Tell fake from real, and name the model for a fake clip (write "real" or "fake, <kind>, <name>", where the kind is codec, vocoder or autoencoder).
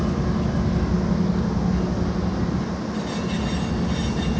real